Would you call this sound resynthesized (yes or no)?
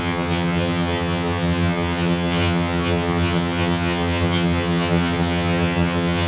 yes